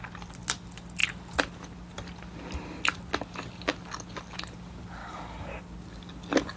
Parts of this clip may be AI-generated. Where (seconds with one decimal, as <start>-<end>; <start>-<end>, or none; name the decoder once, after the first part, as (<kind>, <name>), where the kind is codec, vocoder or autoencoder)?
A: 5.0-5.6 (codec, DAC)